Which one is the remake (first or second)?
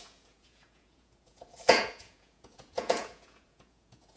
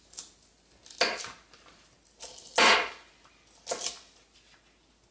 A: first